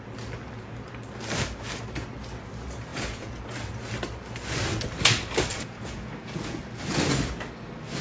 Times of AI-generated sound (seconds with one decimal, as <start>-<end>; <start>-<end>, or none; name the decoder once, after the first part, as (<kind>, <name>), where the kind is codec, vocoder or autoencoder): 2.9-3.4 (vocoder, Vocos); 5.5-6.6